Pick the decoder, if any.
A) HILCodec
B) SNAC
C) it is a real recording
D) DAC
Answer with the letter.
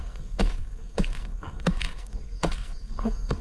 B